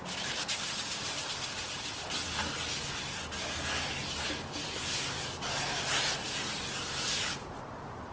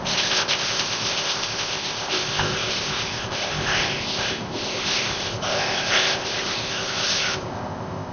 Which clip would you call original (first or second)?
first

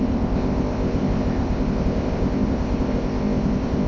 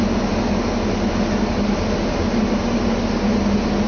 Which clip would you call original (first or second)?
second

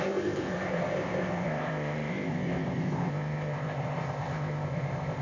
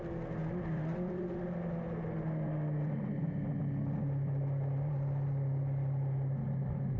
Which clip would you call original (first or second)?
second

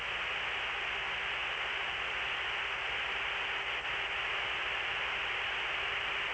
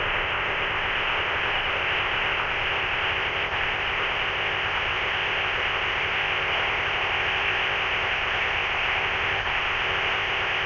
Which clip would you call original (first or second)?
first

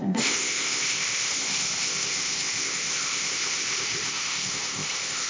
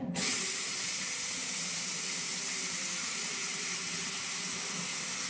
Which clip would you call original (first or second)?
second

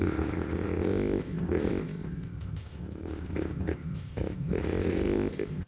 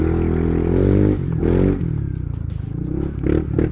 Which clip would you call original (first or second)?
second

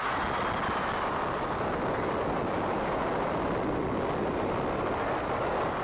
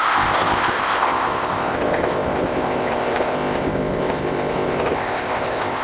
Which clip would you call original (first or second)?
first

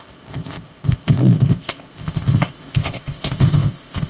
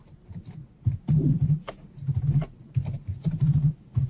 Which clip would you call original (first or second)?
second